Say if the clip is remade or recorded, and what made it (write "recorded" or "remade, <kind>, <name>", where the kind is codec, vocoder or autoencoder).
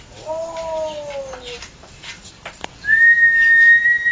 recorded